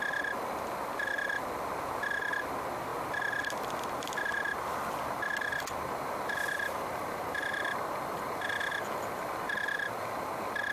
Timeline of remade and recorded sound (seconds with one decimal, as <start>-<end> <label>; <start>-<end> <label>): 0.0-10.7 recorded